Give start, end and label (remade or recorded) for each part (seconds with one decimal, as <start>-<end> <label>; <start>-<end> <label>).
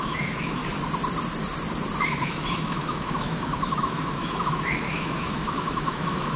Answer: 0.0-0.6 remade; 0.6-2.0 recorded; 2.0-6.4 remade